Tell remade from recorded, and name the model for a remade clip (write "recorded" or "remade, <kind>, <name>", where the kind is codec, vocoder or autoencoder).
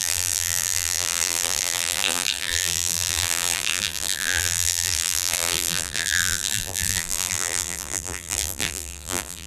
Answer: remade, vocoder, BigVGAN v2